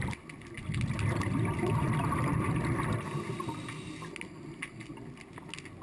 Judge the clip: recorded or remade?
recorded